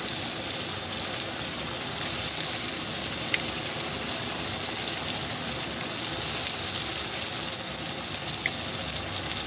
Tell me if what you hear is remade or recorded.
recorded